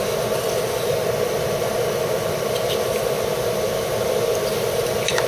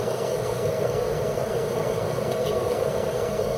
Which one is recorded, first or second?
first